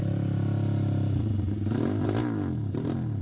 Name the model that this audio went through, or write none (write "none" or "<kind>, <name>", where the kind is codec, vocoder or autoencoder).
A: none